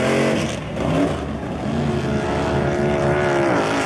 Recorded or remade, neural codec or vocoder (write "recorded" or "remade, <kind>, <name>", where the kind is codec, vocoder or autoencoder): recorded